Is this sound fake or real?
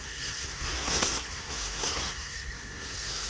fake